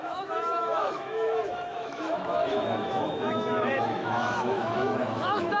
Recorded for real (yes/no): no